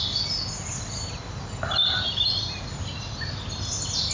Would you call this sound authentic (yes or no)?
yes